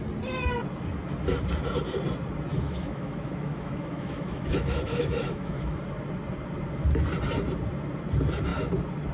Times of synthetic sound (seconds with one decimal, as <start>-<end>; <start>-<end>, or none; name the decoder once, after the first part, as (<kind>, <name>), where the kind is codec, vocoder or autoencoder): 2.5-5.8 (autoencoder, DAC-VAE)

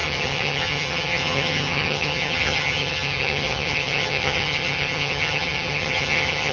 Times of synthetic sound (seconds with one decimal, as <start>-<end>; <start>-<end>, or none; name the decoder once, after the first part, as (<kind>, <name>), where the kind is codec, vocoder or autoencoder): 0.0-6.5 (vocoder, HiFi-GAN)

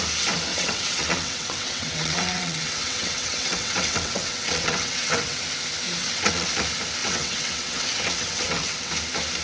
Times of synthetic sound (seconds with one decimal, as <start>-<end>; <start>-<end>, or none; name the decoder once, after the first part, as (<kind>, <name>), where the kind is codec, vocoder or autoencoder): 0.5-5.4 (vocoder, WaveNeXt); 6.0-6.5; 7.0-8.9

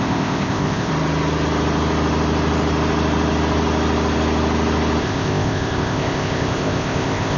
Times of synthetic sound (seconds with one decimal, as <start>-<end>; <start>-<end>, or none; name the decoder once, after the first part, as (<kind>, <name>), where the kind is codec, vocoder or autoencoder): 0.0-0.9 (codec, ZipCodec); 5.0-7.4

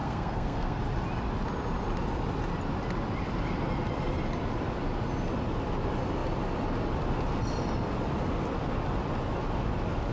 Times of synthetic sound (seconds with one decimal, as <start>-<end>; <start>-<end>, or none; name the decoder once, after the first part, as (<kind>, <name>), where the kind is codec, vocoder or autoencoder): 0.0-0.8 (codec, SNAC)

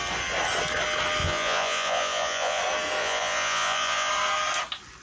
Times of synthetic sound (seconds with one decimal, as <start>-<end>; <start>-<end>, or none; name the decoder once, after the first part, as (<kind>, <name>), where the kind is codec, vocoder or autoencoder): 1.2-2.6 (vocoder, Vocos); 3.0-4.1

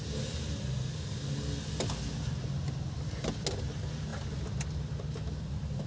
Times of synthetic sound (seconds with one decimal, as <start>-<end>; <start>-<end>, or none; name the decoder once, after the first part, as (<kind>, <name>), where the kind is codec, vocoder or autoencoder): none

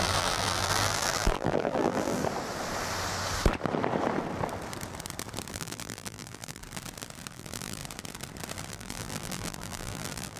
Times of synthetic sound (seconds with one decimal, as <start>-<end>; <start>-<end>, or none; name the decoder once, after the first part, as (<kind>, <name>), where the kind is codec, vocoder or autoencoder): 0.0-2.2 (vocoder, BigVGAN v2); 5.5-6.6; 7.3-7.8; 8.7-10.4